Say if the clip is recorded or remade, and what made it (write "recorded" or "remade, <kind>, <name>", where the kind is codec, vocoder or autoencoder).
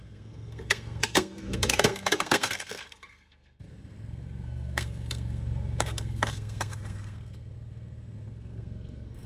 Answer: remade, codec, SNAC